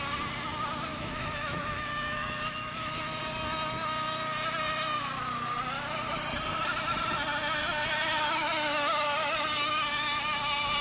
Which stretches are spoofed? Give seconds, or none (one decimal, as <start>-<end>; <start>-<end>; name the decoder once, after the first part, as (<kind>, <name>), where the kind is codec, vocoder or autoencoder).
0.9-3.2 (autoencoder, DAC-VAE)